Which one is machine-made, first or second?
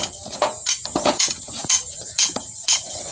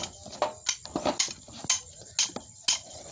first